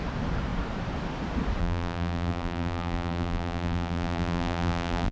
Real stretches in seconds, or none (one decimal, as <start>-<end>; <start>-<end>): 0.0-1.6